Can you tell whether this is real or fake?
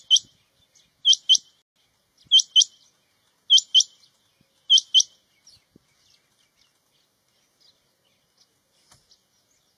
real